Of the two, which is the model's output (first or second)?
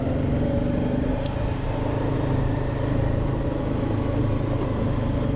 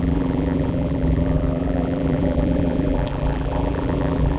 second